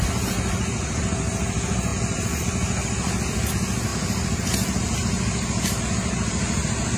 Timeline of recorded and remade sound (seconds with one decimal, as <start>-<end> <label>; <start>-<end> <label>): 0.0-1.9 recorded; 1.9-3.5 remade; 3.5-7.0 recorded